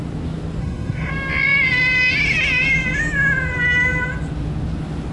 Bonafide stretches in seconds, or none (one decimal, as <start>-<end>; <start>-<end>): 0.0-0.6; 1.1-5.1